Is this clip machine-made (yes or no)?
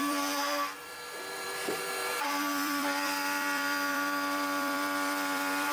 yes